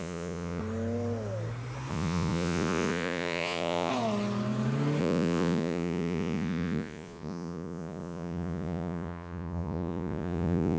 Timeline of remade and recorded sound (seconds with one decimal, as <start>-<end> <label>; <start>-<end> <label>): 0.0-0.6 remade; 0.6-1.9 recorded; 1.9-3.9 remade; 3.9-5.0 recorded; 5.0-10.8 remade